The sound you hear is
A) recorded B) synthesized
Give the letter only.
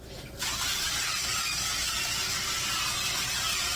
A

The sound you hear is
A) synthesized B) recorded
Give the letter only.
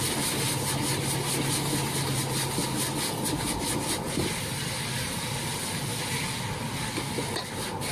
B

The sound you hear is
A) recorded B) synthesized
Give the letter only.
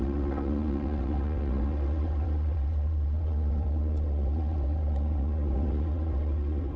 B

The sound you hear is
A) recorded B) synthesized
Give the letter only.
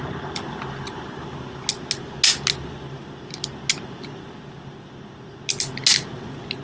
A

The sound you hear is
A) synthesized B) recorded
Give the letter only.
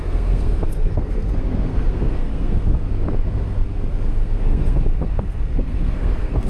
A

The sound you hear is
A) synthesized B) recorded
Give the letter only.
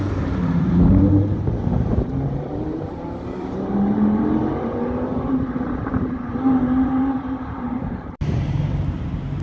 A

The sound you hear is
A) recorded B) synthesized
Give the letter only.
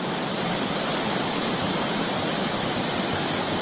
A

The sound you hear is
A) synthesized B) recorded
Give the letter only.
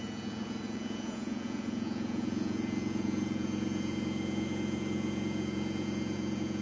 A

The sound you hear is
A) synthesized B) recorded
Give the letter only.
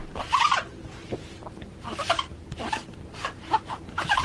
B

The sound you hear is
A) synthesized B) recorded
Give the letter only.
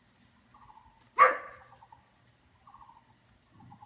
B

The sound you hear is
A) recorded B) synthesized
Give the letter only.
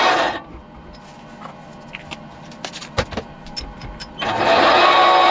A